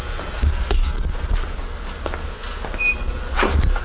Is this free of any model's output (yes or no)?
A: yes